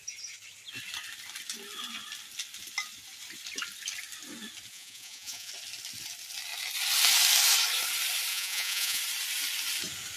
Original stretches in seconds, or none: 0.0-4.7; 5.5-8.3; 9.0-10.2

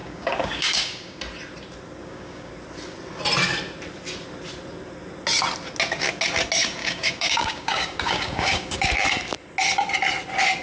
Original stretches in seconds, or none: 1.2-2.0; 2.5-6.8; 8.9-10.6

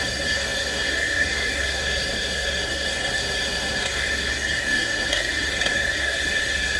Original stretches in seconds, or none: none

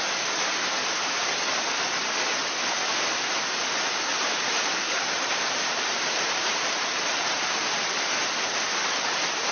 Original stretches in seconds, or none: 0.0-4.1; 8.2-9.5

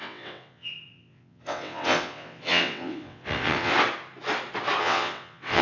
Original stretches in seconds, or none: 3.7-4.8

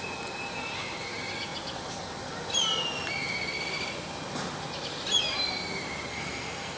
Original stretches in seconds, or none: 0.0-6.1

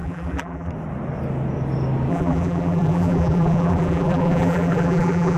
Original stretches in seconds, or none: 0.7-2.1